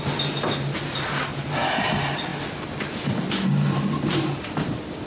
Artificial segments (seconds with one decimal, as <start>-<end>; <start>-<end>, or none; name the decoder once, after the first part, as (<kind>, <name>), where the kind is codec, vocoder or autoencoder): none